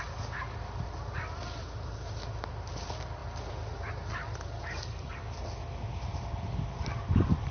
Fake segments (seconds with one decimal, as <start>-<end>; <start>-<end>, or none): none